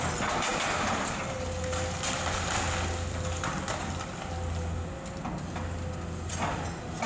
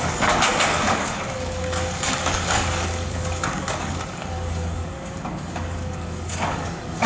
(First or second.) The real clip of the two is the first